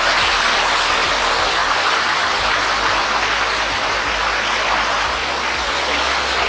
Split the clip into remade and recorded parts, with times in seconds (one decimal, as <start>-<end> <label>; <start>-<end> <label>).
0.0-6.5 recorded